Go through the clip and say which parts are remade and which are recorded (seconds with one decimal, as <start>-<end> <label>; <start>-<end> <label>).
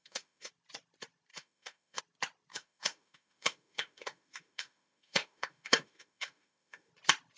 0.0-0.5 remade; 0.5-1.3 recorded; 1.3-2.0 remade; 2.0-2.5 recorded; 2.5-6.9 remade; 6.9-7.4 recorded